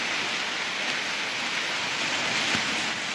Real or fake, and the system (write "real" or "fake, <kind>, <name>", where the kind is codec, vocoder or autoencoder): real